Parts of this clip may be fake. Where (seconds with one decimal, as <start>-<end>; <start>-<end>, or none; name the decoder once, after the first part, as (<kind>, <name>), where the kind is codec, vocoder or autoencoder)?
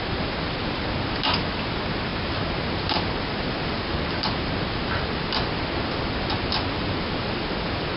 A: none